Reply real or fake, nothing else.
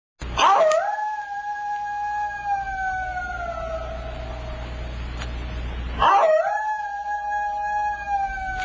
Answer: real